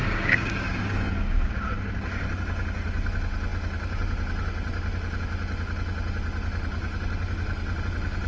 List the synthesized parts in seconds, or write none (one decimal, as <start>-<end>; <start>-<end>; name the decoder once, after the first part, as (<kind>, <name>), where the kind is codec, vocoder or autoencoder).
0.0-1.5 (codec, DAC)